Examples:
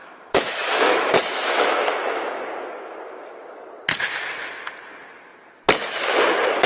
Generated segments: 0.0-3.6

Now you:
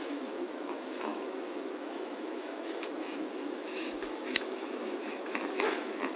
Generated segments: 0.0-6.2

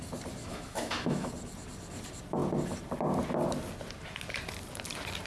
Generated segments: 0.4-1.3

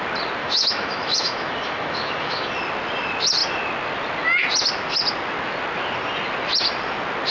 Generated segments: 0.4-2.5